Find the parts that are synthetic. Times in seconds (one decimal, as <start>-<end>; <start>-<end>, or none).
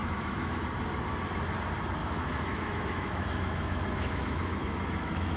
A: 0.0-0.6; 2.0-5.4